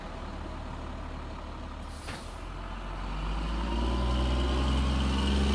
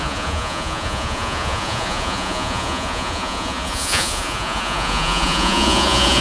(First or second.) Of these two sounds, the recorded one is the first